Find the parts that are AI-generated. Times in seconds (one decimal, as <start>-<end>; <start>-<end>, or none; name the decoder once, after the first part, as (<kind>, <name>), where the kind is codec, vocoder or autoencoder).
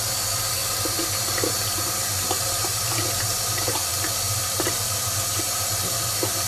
none